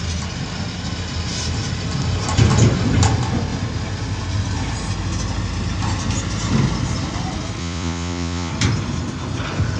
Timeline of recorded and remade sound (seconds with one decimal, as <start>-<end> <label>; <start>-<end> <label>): 0.0-7.6 recorded; 7.6-8.5 remade; 8.5-9.8 recorded